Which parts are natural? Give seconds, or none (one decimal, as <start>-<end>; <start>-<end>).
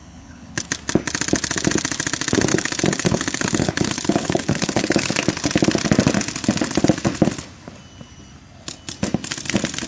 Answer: 0.7-2.5; 5.1-9.9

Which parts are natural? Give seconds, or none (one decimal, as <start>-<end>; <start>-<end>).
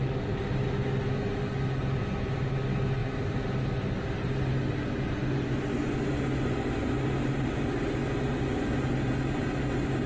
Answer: 0.0-10.1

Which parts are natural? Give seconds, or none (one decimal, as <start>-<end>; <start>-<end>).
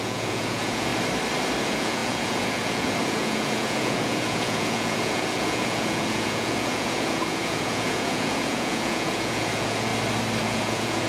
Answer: 0.9-1.6; 9.9-10.4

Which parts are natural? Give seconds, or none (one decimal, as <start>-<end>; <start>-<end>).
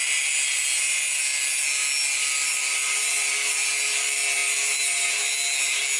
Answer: 0.0-6.0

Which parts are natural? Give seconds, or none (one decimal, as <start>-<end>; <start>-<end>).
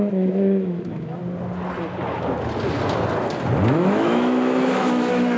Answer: 1.2-3.7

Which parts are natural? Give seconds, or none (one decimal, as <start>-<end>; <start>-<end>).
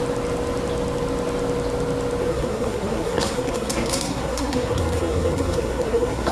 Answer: 0.0-2.2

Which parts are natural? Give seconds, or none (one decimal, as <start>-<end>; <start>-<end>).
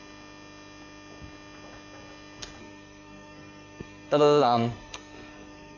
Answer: 0.0-2.6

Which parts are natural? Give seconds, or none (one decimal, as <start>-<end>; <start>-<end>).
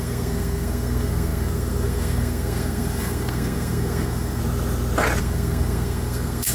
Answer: 4.4-5.2